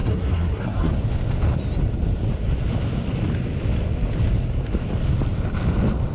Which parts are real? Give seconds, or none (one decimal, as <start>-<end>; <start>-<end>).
0.9-6.1